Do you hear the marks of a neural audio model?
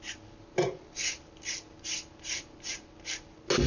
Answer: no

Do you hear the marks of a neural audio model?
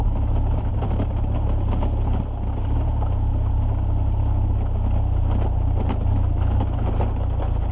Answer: no